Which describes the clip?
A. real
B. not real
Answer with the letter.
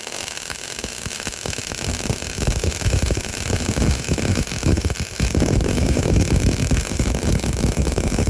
B